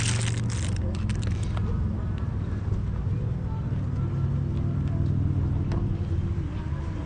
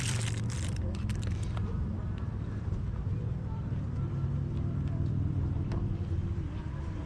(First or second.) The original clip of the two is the first